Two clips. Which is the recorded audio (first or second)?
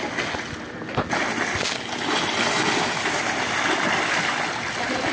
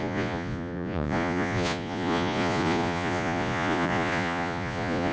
first